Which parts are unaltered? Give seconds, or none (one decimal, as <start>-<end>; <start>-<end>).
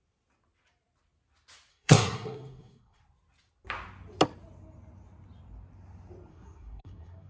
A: 0.0-1.7; 3.0-6.3